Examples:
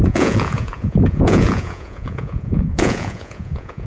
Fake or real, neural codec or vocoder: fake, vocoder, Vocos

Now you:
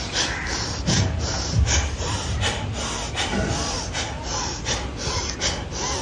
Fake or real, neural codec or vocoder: real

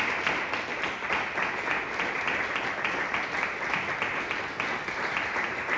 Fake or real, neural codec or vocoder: real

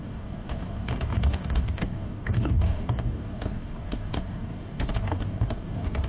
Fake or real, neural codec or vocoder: fake, codec, DAC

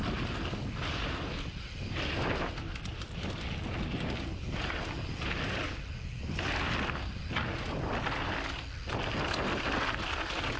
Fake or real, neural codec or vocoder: real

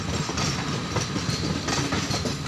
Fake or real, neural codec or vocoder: real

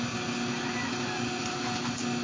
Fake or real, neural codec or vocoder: real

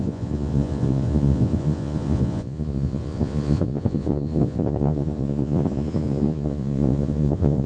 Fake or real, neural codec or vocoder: fake, vocoder, Vocos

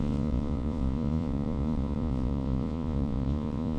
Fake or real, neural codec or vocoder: fake, vocoder, Vocos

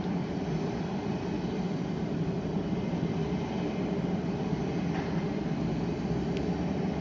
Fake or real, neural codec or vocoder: fake, vocoder, BigVGAN v2